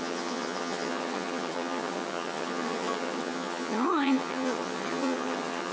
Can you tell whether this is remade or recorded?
remade